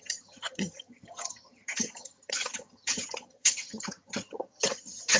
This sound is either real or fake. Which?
fake